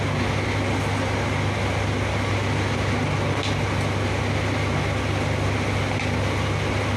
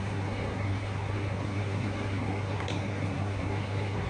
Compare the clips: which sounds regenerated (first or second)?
second